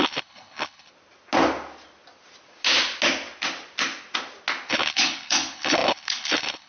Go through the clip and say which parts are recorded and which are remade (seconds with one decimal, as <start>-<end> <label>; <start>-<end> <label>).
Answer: 0.0-0.9 remade; 0.9-4.7 recorded; 4.7-6.7 remade